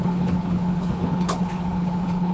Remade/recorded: remade